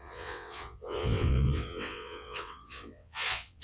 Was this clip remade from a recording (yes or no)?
yes